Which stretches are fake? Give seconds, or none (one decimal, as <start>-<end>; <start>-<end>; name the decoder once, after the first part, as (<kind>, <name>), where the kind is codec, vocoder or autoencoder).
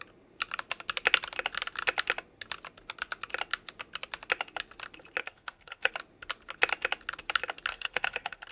5.2-5.9 (codec, SNAC); 7.7-8.5